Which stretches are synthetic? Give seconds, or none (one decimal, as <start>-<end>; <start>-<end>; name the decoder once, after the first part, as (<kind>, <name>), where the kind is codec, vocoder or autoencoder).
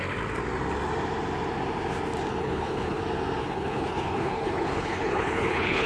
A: 2.4-3.0 (codec, HILCodec); 3.4-5.9